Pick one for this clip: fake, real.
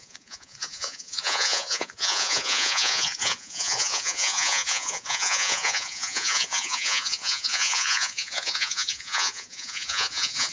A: fake